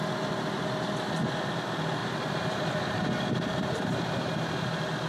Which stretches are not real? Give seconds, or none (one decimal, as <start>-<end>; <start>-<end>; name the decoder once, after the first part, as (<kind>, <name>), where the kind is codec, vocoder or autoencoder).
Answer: 2.0-3.8 (vocoder, BigVGAN v2)